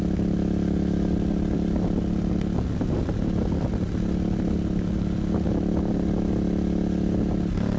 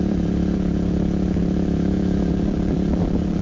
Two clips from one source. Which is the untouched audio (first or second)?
first